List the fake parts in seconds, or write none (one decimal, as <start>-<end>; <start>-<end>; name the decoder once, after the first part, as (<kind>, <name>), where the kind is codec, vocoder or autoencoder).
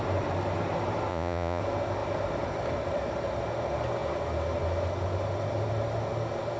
1.1-1.6 (vocoder, Vocos)